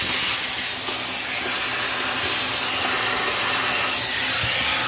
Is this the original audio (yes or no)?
yes